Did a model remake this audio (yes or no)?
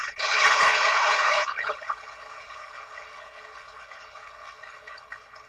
yes